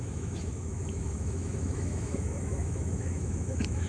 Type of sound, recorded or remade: remade